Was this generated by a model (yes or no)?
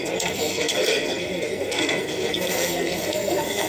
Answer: yes